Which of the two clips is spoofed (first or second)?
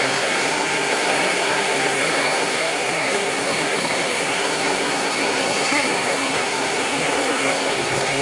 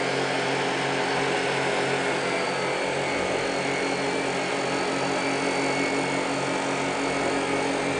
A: first